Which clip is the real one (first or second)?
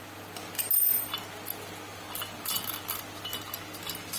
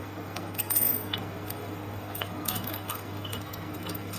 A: first